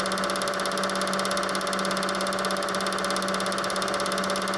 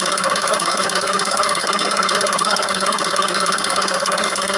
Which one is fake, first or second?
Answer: second